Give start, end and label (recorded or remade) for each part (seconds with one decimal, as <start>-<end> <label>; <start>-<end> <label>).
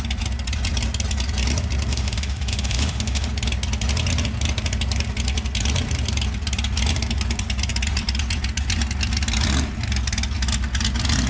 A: 0.0-1.9 recorded; 1.9-3.3 remade; 3.3-11.3 recorded